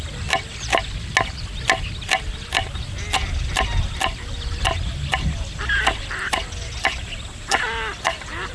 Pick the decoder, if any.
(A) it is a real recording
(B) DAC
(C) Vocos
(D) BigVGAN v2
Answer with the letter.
A